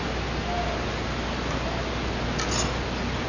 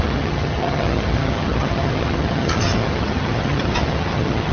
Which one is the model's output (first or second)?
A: second